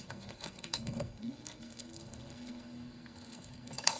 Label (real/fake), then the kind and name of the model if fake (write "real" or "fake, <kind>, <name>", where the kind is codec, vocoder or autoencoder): fake, codec, SNAC